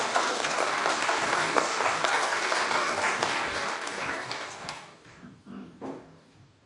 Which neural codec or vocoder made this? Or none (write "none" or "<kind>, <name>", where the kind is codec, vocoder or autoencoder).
codec, DAC